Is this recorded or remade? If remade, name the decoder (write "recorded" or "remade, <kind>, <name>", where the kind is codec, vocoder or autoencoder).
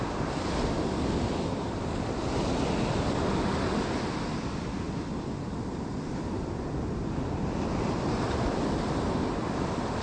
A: recorded